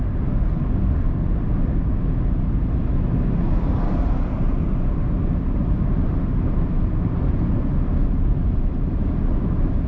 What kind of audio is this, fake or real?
real